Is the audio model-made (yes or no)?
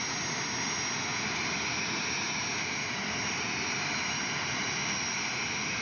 no